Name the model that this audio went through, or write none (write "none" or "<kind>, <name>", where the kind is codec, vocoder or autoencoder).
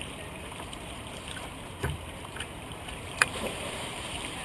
vocoder, BigVGAN v2